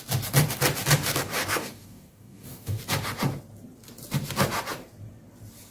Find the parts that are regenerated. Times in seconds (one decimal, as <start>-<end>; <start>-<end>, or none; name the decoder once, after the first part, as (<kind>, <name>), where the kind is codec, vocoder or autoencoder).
1.3-2.8 (codec, DAC)